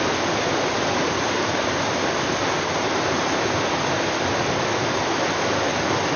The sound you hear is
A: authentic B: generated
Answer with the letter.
A